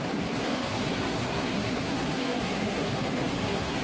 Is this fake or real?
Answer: fake